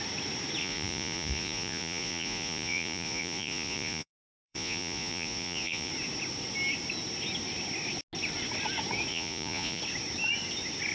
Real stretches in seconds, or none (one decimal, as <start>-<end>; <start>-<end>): 0.0-0.6; 5.9-9.1; 9.8-10.9